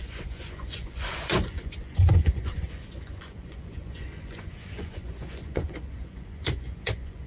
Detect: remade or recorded remade